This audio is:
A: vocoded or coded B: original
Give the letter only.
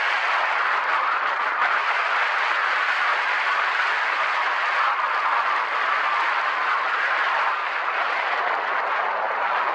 B